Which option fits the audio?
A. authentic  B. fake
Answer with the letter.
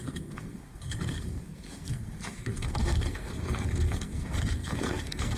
B